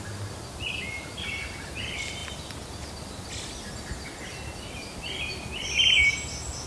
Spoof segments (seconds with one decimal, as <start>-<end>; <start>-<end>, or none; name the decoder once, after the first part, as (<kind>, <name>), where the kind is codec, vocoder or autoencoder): none

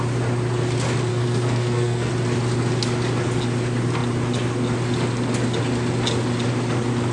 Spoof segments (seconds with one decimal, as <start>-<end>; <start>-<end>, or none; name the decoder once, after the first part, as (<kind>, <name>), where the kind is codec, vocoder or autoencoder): 1.1-2.1 (codec, SNAC)

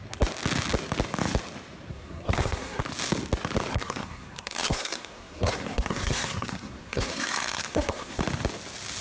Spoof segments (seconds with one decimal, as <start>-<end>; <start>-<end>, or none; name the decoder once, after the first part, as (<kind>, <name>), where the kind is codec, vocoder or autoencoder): 1.9-2.8 (codec, SNAC); 3.7-8.2

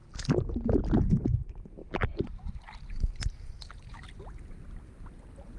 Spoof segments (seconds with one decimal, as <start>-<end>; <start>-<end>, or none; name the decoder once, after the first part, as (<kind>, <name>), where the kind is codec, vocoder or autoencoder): none

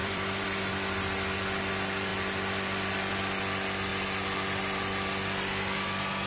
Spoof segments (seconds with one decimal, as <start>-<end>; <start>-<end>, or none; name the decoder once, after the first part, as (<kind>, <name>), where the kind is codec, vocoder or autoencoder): 0.0-0.7 (vocoder, BigVGAN v2)

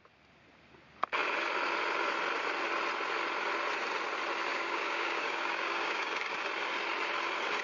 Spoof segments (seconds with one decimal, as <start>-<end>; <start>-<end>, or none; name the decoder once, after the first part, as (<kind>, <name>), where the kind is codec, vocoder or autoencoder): 4.5-6.3 (codec, DAC)

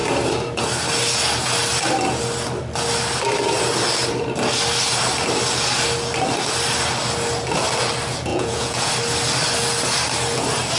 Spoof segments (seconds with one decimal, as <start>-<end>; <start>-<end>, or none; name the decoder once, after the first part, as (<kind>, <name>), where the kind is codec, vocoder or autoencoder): 8.3-8.9 (vocoder, Vocos)

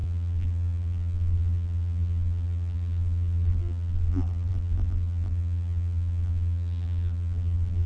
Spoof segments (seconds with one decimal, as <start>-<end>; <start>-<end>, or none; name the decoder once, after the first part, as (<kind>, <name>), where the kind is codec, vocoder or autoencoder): 0.0-7.9 (vocoder, BigVGAN v2)